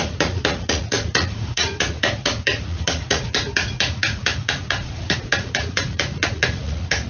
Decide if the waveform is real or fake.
fake